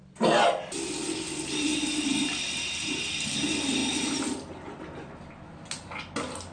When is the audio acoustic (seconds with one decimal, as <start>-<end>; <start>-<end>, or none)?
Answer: 0.0-6.5